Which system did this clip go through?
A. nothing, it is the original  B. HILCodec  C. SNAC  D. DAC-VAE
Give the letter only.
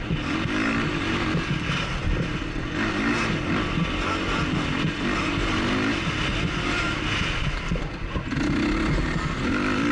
A